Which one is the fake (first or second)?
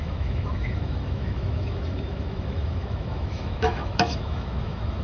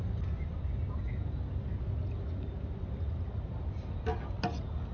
first